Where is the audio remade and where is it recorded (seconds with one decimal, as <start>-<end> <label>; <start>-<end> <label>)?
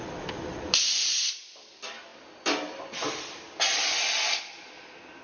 0.0-5.2 recorded